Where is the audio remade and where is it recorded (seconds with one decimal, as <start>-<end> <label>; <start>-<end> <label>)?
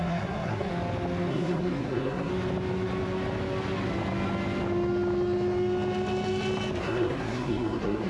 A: 0.0-0.7 remade; 0.7-1.3 recorded; 1.3-2.3 remade; 2.3-6.8 recorded; 6.8-8.1 remade